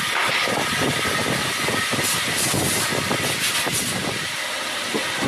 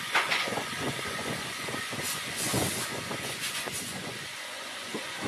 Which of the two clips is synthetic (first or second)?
second